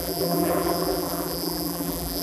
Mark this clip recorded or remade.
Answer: remade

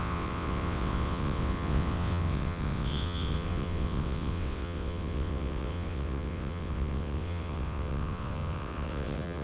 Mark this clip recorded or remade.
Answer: remade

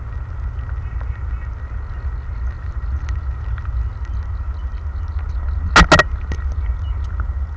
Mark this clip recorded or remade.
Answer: recorded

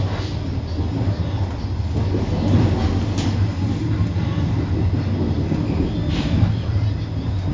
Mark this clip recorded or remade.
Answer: recorded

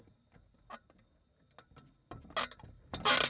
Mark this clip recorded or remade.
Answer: recorded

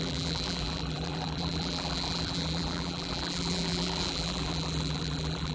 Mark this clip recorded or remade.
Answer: remade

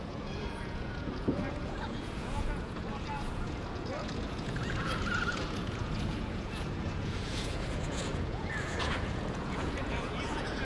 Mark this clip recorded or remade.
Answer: remade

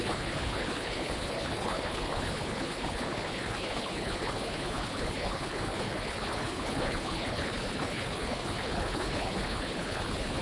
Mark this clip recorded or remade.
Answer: remade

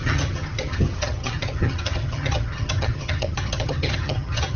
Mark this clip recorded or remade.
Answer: remade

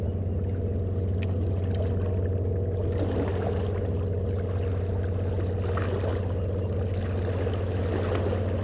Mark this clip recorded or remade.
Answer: recorded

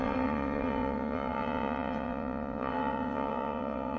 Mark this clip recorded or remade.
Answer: remade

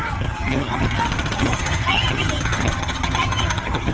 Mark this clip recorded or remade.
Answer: remade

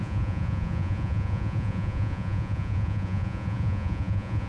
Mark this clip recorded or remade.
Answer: remade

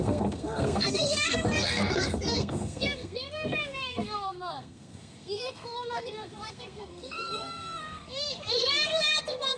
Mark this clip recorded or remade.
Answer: remade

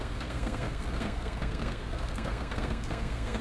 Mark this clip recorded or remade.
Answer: remade